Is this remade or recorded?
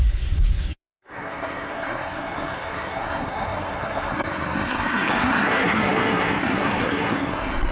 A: remade